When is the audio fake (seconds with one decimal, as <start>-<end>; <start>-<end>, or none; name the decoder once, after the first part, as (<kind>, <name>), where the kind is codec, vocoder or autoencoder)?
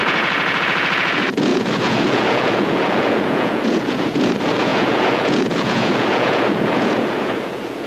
0.0-7.9 (vocoder, Vocos)